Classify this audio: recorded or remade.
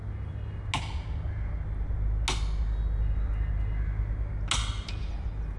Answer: recorded